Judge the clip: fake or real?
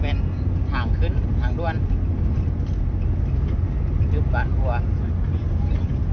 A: real